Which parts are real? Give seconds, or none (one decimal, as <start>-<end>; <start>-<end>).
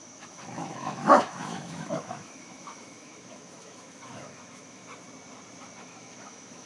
4.8-5.8